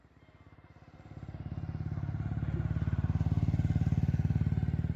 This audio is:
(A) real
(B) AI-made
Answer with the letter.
A